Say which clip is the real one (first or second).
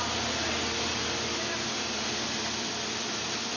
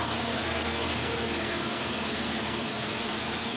first